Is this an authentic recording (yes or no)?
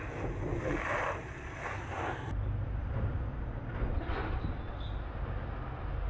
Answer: yes